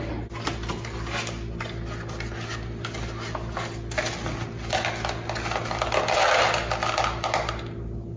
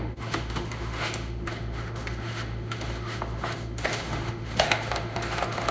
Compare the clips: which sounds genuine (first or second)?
first